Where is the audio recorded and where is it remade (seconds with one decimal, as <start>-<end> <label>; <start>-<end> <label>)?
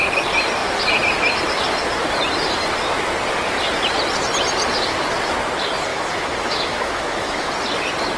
0.0-5.9 recorded; 5.9-7.5 remade; 7.5-8.2 recorded